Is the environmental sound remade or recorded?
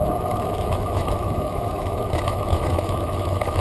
remade